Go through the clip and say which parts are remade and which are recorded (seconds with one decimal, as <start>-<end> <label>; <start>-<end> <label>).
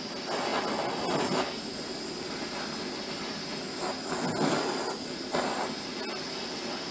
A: 0.0-6.9 recorded